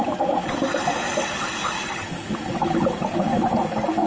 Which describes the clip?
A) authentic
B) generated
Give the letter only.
A